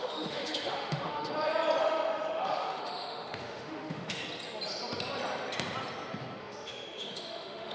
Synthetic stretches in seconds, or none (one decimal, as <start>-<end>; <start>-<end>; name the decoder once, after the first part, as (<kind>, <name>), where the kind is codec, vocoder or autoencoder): 0.0-1.3 (autoencoder, DAC-VAE); 1.8-4.2; 6.4-7.7